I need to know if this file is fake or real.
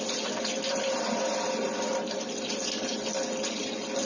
real